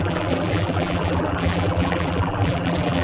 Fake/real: fake